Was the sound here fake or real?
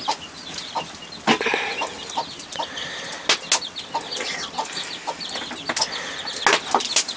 real